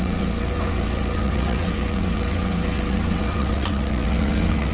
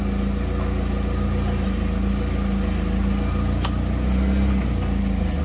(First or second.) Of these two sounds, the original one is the second